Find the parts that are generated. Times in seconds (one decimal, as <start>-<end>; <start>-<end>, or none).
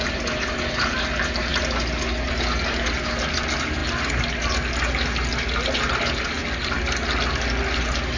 none